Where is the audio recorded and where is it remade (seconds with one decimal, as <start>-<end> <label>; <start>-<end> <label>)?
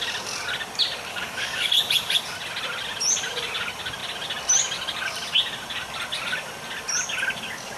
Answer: 0.0-1.1 recorded; 1.1-1.7 remade; 1.7-7.8 recorded